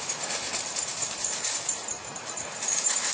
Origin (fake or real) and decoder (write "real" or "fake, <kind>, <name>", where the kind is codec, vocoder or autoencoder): fake, vocoder, BigVGAN v2